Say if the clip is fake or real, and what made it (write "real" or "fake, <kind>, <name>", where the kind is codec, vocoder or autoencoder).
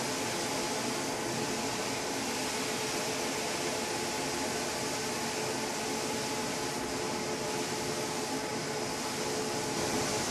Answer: real